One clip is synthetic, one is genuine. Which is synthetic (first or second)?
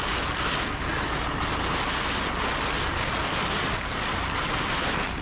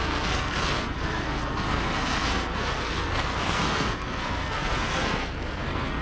second